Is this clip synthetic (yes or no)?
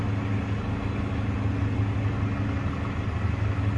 no